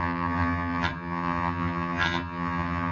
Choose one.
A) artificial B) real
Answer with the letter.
A